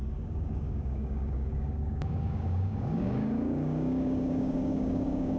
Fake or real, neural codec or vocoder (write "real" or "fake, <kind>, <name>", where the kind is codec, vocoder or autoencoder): fake, codec, DAC